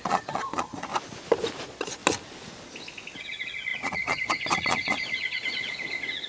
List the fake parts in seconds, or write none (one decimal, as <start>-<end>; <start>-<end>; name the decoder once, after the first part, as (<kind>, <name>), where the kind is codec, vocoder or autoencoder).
0.0-0.9 (vocoder, Vocos); 1.6-2.0; 3.2-6.3